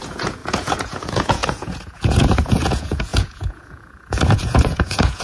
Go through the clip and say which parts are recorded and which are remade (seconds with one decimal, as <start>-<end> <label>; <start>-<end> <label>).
0.0-5.2 remade